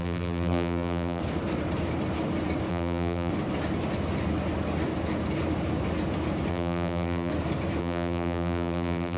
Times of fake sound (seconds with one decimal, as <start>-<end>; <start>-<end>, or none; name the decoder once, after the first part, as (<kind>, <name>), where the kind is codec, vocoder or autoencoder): 0.0-1.2 (vocoder, BigVGAN v2); 2.7-3.3; 6.5-7.3; 7.8-9.2